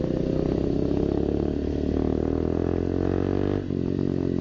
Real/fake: real